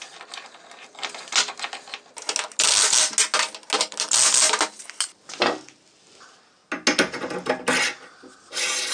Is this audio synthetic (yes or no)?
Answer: no